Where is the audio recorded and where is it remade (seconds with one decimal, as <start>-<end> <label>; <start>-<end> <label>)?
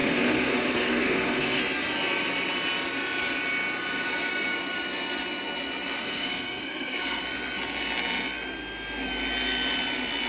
0.0-1.6 remade; 1.6-6.0 recorded; 6.0-7.2 remade; 7.2-10.3 recorded